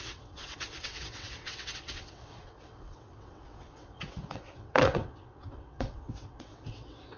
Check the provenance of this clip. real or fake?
fake